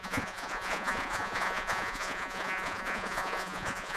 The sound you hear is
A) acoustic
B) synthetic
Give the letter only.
B